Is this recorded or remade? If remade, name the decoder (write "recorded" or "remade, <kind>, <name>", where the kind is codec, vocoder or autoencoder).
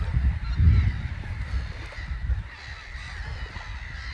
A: recorded